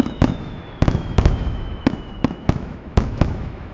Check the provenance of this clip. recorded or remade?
remade